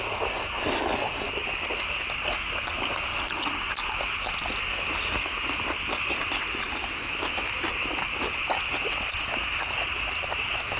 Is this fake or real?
real